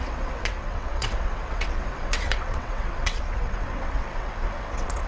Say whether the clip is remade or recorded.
remade